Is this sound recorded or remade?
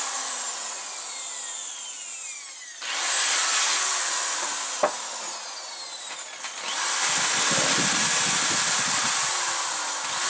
recorded